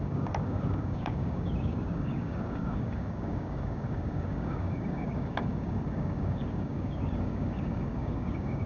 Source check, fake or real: fake